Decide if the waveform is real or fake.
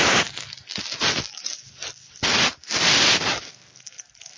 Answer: real